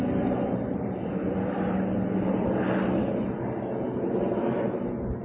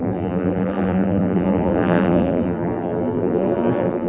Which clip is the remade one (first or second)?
second